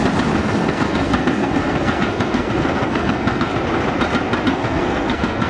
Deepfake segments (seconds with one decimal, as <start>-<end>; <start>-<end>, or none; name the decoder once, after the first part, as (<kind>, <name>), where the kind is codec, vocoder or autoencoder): 0.4-3.5 (codec, SNAC); 4.5-5.5